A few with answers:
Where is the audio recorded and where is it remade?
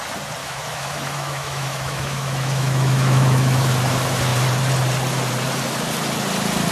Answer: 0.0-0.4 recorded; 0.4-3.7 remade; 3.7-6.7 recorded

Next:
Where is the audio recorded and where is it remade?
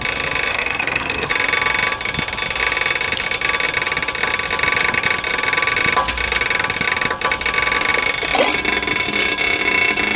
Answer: 0.0-0.5 recorded; 0.5-1.3 remade; 1.3-10.2 recorded